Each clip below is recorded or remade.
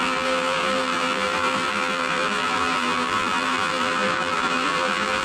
remade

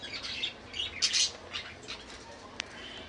recorded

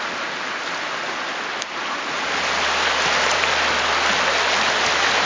recorded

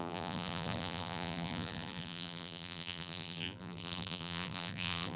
remade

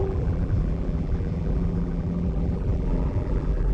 remade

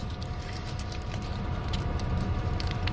remade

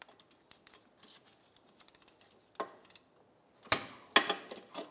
recorded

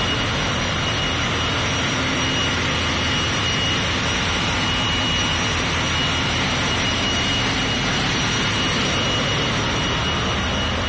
recorded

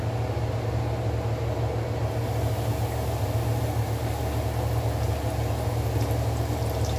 recorded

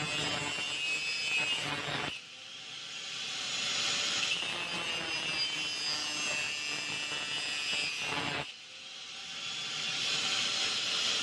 recorded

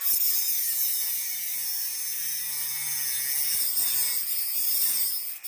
recorded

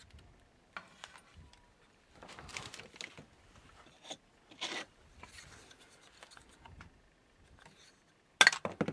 recorded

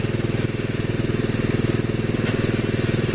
recorded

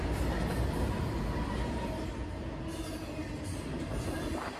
recorded